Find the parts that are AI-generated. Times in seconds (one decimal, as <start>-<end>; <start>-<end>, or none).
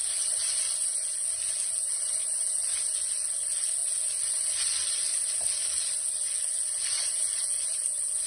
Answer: none